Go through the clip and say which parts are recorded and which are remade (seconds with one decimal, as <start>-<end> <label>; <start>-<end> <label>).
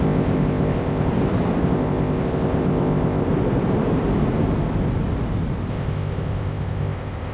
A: 0.0-1.1 remade; 1.1-1.6 recorded; 1.6-3.3 remade; 3.3-5.7 recorded; 5.7-7.3 remade